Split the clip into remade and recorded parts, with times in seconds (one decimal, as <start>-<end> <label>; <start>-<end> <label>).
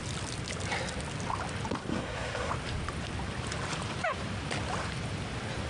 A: 0.0-1.9 recorded; 1.9-2.5 remade; 2.5-5.7 recorded